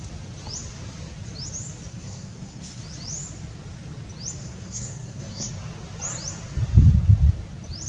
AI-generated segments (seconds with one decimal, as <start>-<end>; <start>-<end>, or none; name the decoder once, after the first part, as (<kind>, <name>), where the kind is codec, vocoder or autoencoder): 1.9-2.8 (codec, SNAC); 4.4-5.5